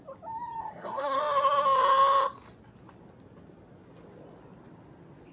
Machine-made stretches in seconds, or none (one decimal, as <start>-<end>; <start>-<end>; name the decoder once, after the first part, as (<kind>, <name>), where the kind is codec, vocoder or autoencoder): 0.6-1.2 (codec, SNAC)

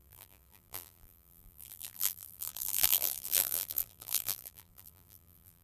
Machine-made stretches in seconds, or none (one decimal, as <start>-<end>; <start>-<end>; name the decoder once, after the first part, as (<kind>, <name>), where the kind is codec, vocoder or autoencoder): 0.0-5.6 (vocoder, BigVGAN v2)

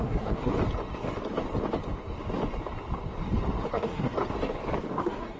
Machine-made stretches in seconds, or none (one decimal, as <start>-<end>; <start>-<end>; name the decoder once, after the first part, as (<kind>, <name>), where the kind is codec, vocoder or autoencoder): 0.0-0.5 (codec, SNAC); 3.7-4.2; 5.0-5.4

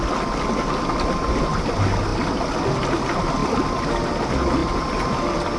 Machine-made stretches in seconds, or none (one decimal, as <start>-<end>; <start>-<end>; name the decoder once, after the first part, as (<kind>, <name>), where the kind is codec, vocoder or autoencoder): none

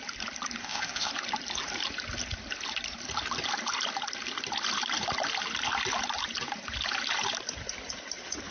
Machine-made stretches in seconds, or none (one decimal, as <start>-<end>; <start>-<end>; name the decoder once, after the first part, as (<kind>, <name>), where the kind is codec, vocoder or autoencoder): 0.6-1.1 (codec, ZipCodec)

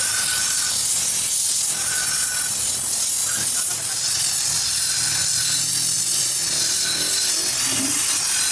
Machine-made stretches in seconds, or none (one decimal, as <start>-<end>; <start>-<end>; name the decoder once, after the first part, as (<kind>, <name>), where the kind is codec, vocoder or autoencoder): none